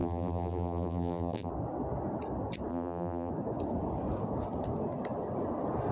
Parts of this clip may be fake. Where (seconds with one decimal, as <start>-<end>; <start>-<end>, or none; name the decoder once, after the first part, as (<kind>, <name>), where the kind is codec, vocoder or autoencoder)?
0.0-1.5 (vocoder, BigVGAN v2); 2.7-3.3

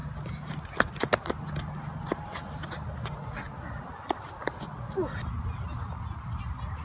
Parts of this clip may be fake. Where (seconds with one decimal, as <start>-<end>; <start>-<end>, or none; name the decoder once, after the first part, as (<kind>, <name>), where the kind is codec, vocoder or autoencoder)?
1.9-2.6 (vocoder, BigVGAN v2)